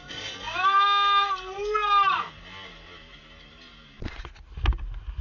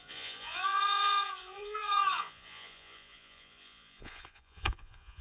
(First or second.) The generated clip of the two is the second